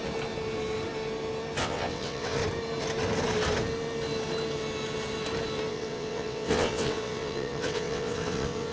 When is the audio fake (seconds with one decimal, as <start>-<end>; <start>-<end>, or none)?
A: 1.6-2.4; 5.7-8.7